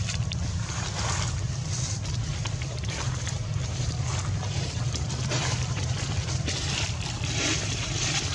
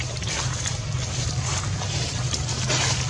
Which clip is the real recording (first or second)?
second